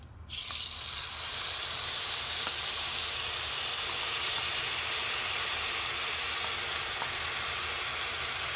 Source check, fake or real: real